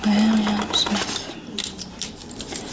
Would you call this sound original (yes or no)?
yes